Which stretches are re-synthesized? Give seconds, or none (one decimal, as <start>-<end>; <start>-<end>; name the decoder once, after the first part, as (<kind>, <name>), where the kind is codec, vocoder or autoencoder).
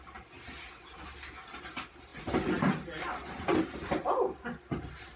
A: none